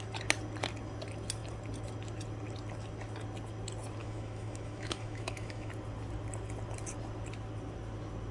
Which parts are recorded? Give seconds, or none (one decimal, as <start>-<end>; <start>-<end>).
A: 0.0-4.0; 5.7-8.3